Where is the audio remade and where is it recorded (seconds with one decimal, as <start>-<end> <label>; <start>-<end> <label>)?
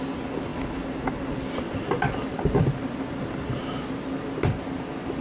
0.0-5.2 recorded